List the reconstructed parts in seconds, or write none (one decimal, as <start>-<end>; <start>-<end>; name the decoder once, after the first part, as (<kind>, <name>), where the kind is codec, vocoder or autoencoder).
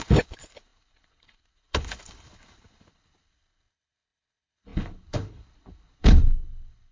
0.0-6.9 (codec, HILCodec)